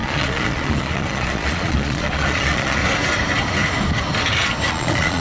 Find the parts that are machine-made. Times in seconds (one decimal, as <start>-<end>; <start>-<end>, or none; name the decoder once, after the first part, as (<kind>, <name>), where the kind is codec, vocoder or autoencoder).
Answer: 0.0-2.8 (vocoder, Vocos); 4.7-5.2